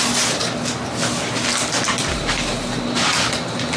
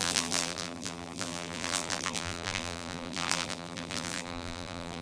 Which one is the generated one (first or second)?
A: second